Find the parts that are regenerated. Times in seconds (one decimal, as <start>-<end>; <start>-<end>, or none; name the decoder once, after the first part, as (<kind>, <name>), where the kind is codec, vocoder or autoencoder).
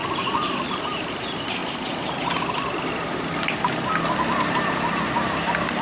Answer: 0.0-0.8 (vocoder, BigVGAN v2)